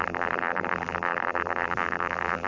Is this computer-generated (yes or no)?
yes